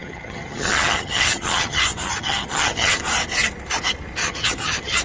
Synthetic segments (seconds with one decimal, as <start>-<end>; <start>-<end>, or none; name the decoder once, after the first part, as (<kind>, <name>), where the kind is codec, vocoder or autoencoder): 0.0-3.0 (vocoder, HiFi-GAN); 4.2-5.0